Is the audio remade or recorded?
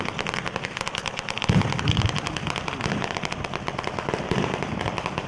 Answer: recorded